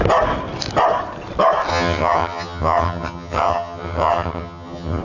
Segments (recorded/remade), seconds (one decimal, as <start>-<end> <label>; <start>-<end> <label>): 0.0-1.7 recorded; 1.7-5.0 remade